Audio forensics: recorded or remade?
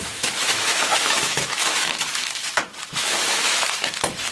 remade